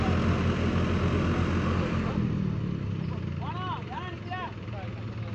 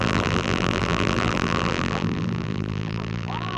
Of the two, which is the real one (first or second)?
first